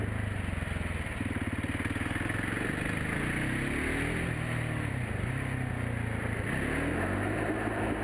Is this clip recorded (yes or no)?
yes